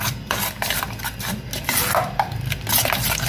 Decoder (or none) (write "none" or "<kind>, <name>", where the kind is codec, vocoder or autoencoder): none